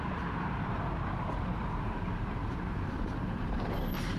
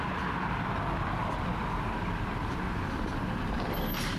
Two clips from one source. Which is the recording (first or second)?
second